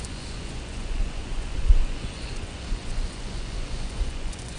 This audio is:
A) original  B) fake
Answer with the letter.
B